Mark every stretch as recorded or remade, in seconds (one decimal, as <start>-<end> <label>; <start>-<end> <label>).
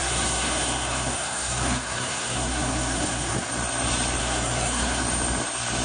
0.0-3.5 remade; 3.5-4.2 recorded; 4.2-5.0 remade; 5.0-5.8 recorded